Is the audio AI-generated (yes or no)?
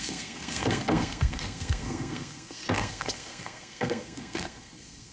yes